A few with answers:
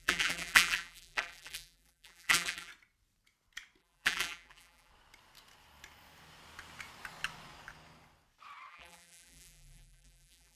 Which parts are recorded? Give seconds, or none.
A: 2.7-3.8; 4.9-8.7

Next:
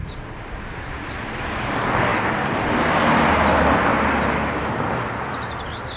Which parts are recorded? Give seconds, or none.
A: 0.0-6.0

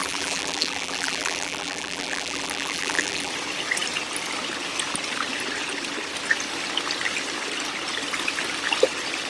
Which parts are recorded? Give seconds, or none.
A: 3.3-9.3

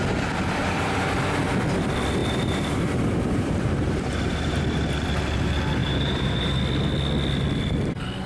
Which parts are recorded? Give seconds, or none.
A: 0.0-0.6; 1.4-2.2; 4.6-5.8; 6.6-8.3

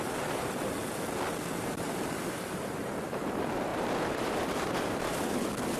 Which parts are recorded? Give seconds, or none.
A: 0.8-1.6

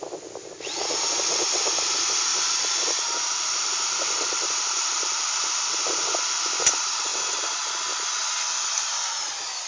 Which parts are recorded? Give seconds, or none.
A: 0.0-2.3; 5.8-7.1; 7.8-8.2

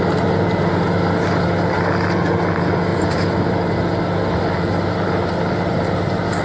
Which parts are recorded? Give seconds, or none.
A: 0.0-2.9; 3.5-6.4